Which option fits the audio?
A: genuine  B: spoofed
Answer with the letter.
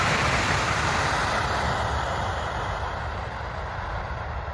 A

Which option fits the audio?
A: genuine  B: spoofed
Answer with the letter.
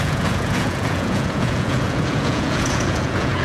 B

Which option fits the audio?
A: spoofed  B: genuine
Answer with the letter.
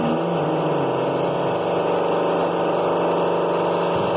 B